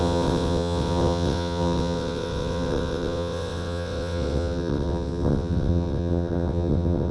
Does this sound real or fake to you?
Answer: fake